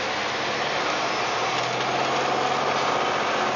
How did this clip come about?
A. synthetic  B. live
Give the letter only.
B